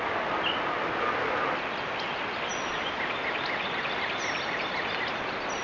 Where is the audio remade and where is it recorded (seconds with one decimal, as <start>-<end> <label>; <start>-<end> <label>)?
0.0-5.6 recorded